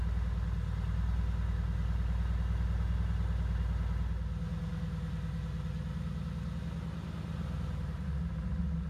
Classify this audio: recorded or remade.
recorded